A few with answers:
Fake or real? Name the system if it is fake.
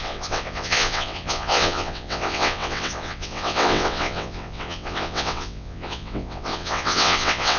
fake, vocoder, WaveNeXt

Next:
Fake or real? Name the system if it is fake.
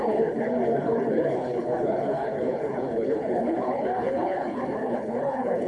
fake, codec, HILCodec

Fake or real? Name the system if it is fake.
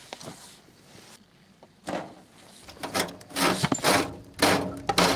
real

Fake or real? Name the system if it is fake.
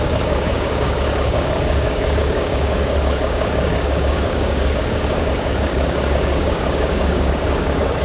fake, codec, DAC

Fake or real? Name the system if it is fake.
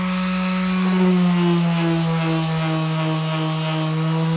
real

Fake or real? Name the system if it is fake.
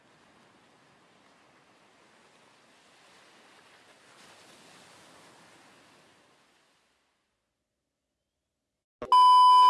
real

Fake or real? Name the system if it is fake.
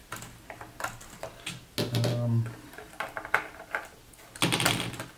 real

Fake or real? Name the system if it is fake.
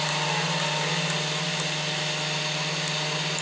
real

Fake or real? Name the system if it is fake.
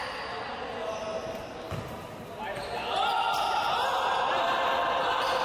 real